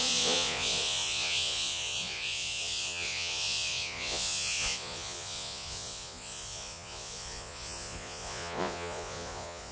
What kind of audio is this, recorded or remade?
remade